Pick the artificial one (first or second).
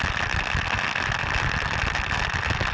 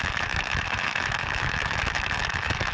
second